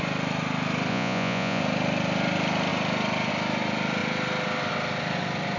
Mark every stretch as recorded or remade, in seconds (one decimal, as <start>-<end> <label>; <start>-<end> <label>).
0.0-0.9 recorded; 0.9-1.6 remade; 1.6-5.6 recorded